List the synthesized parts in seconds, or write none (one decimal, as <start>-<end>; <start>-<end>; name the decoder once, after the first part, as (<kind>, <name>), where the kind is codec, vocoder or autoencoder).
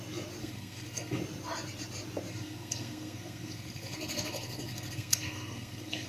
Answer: 0.4-1.2 (codec, SNAC); 2.3-6.1